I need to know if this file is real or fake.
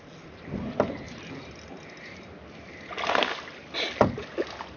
real